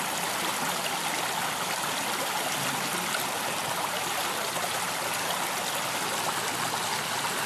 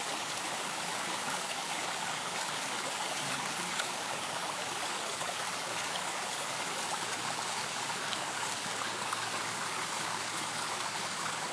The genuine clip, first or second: first